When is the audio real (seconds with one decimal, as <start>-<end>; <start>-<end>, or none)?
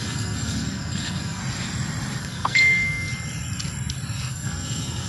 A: 1.4-2.2; 3.1-4.3